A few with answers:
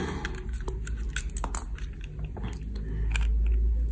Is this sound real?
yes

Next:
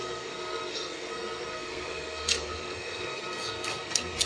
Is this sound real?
no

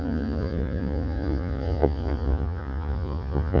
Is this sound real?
no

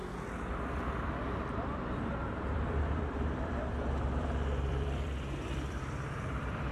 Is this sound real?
no